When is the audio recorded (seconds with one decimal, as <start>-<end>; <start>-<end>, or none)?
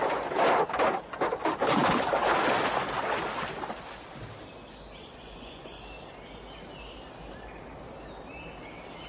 0.0-5.0; 5.8-9.1